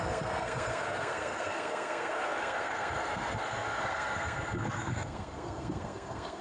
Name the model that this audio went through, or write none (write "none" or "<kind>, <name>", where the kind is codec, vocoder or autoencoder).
codec, SNAC